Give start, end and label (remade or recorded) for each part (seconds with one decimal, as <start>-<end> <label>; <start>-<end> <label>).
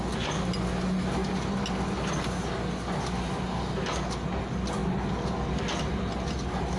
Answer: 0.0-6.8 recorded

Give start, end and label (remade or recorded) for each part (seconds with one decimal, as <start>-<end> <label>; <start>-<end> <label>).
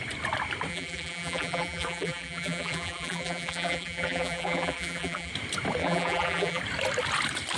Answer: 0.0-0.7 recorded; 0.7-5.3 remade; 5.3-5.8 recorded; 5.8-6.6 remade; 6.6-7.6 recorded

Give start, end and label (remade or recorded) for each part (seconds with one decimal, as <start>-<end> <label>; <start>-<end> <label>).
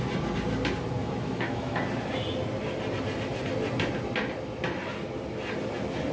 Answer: 0.0-1.0 recorded; 1.0-1.8 remade; 1.8-6.1 recorded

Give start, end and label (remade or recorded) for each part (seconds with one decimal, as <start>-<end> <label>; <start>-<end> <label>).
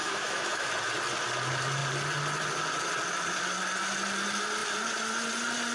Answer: 0.0-0.7 remade; 0.7-5.7 recorded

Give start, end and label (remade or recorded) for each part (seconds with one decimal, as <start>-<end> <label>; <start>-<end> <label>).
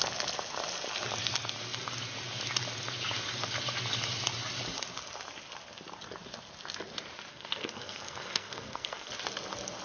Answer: 0.0-7.3 recorded; 7.3-9.1 remade; 9.1-9.8 recorded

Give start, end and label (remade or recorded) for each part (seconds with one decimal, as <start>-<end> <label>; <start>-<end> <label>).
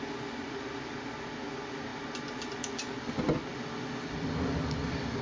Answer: 0.0-5.2 recorded